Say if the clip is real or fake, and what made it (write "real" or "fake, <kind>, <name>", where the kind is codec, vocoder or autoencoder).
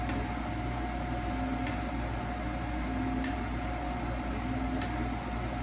real